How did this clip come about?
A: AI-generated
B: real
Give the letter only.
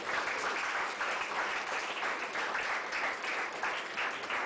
B